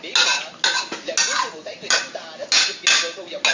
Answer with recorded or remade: recorded